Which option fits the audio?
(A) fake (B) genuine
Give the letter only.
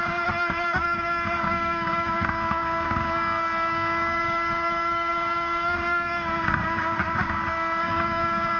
A